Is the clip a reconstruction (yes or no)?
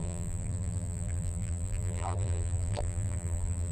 yes